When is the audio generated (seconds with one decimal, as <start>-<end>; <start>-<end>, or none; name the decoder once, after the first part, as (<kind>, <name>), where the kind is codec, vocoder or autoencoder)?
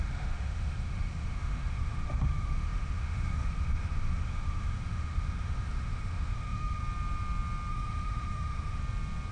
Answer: 0.0-6.8 (autoencoder, DAC-VAE); 7.7-8.8